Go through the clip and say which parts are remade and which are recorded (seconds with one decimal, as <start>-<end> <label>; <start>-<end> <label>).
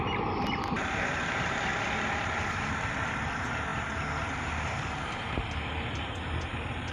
0.0-1.7 remade; 1.7-2.4 recorded; 2.4-3.7 remade; 3.7-4.3 recorded; 4.3-6.9 remade